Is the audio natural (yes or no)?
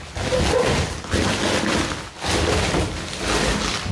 yes